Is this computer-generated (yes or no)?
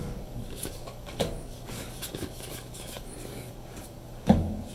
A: yes